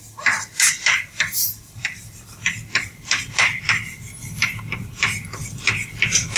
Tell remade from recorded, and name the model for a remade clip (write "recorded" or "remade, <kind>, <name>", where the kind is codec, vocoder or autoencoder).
remade, vocoder, BigVGAN v2